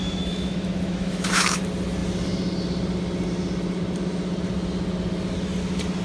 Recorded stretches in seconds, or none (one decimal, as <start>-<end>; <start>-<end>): 1.6-6.0